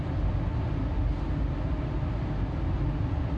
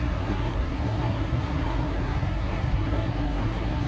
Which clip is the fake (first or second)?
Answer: second